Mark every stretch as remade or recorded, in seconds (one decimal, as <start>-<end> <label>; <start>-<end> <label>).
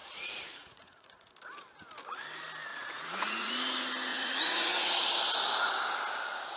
0.0-1.3 remade; 1.3-2.7 recorded; 2.7-3.5 remade; 3.5-4.1 recorded; 4.1-5.1 remade; 5.1-6.6 recorded